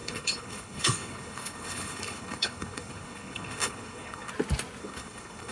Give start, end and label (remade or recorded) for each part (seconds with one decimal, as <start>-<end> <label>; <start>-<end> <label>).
0.0-4.3 remade; 4.3-4.8 recorded; 4.8-5.5 remade

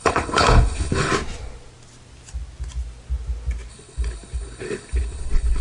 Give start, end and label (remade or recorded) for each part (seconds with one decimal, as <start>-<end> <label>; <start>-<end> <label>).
0.0-1.1 remade; 1.1-3.7 recorded; 3.7-5.6 remade

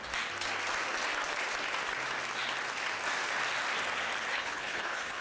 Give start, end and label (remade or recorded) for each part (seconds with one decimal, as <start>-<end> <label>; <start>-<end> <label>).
0.0-4.3 recorded; 4.3-5.2 remade

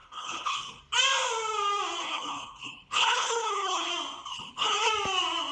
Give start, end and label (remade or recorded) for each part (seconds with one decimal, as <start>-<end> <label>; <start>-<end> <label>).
0.0-0.8 remade; 0.8-2.0 recorded; 2.0-3.9 remade; 3.9-4.3 recorded; 4.3-4.9 remade; 4.9-5.5 recorded

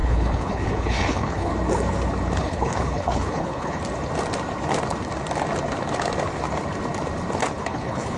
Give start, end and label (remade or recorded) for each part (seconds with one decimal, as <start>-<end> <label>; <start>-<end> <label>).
0.0-1.5 remade; 1.5-2.4 recorded; 2.4-3.8 remade; 3.8-7.6 recorded; 7.6-8.2 remade

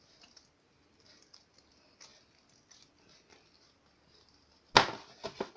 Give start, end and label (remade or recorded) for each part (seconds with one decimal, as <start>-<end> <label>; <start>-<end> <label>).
0.0-5.6 recorded

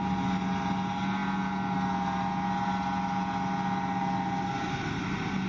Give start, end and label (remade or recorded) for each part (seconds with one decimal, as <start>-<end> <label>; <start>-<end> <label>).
0.0-5.5 recorded